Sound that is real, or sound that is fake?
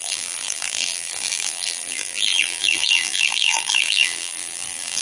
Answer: fake